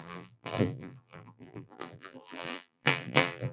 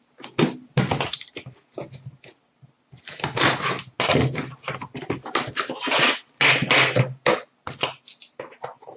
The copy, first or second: first